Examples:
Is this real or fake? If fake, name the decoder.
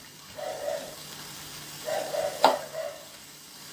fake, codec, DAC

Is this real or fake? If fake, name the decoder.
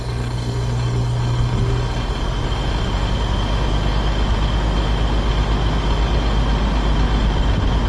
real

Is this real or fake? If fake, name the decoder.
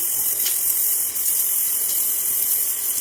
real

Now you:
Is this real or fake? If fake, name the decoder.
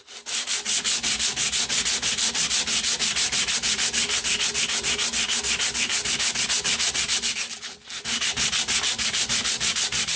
real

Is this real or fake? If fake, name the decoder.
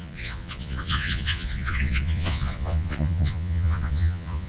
fake, vocoder, Vocos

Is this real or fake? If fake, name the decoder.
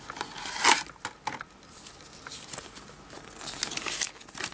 real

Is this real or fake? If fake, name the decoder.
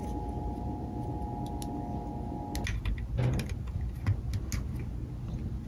real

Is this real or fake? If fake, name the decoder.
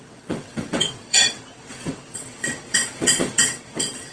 fake, vocoder, WaveNeXt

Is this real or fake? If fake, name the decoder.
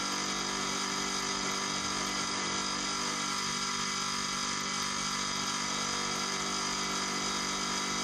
real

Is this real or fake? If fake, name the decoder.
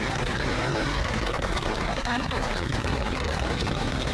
fake, codec, SNAC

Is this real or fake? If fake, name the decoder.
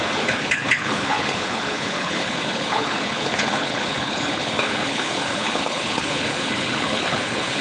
fake, codec, HILCodec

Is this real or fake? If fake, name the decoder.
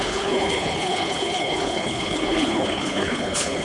fake, codec, HILCodec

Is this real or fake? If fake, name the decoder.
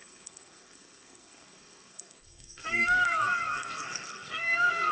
fake, codec, SNAC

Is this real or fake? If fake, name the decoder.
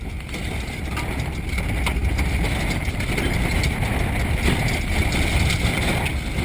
real